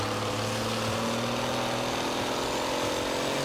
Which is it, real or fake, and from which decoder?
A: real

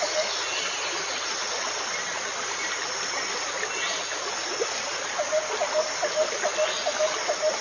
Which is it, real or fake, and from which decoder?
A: real